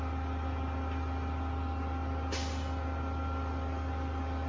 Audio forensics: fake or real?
real